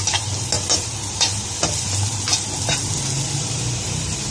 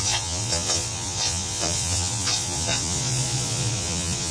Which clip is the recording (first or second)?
first